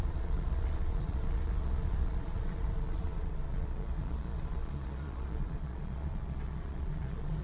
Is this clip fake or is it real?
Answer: fake